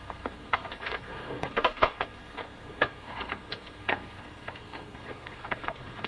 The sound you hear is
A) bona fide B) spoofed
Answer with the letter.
B